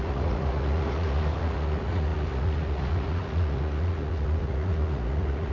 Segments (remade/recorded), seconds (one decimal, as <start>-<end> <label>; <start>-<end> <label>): 0.0-5.5 remade